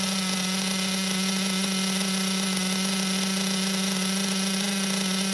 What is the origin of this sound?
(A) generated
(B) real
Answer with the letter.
B